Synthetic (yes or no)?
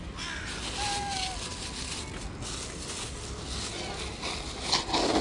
no